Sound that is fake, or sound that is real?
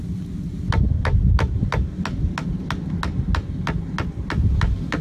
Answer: real